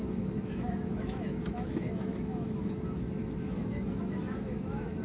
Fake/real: fake